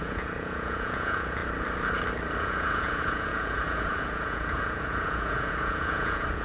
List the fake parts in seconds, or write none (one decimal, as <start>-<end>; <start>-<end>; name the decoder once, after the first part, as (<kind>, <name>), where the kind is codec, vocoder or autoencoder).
0.0-1.4 (vocoder, Vocos); 2.4-6.4

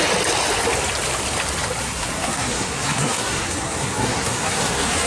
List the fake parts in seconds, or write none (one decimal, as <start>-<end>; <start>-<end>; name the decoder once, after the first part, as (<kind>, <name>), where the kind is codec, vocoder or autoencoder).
1.8-5.1 (codec, SNAC)